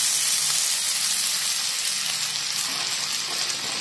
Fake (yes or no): no